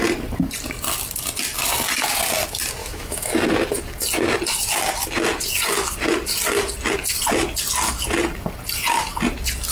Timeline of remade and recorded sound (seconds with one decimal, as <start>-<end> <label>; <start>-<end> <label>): 0.0-2.8 recorded; 2.8-3.3 remade; 3.3-9.7 recorded